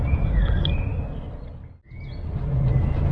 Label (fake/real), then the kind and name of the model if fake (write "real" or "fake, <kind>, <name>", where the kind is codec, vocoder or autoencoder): real